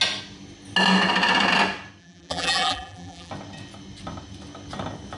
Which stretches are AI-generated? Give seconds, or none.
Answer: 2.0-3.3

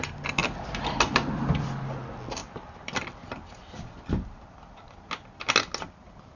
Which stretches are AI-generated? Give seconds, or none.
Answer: 0.4-1.8; 2.4-4.0

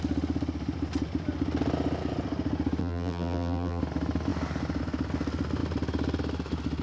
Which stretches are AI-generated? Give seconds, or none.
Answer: 2.8-3.8

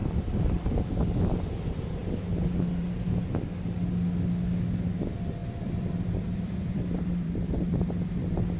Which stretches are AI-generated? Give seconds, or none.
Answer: 0.0-0.8; 5.4-7.9

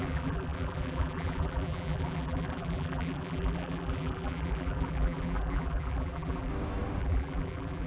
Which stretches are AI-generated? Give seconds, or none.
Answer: 0.0-6.5; 7.0-7.9